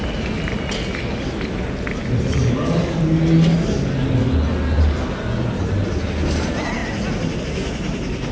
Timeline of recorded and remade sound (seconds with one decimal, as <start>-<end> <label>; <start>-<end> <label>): 0.0-8.3 recorded